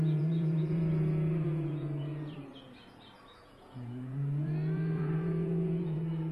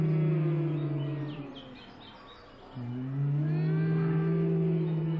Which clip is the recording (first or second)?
second